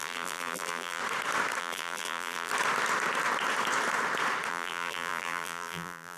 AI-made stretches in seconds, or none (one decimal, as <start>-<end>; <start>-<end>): 0.0-1.0; 1.6-2.5; 4.5-6.2